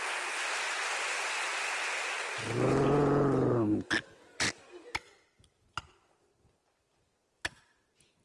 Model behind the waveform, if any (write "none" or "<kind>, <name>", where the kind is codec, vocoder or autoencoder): none